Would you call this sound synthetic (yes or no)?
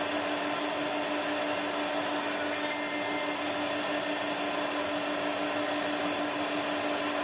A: no